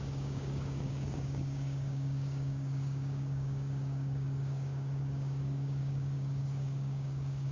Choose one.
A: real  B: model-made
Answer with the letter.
B